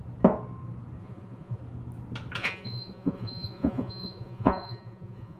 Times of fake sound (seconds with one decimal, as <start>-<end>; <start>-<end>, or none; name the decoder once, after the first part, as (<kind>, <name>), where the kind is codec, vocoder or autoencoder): 1.0-1.6 (vocoder, Vocos); 2.4-5.4